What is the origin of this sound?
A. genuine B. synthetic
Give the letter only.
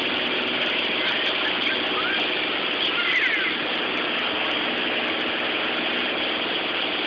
A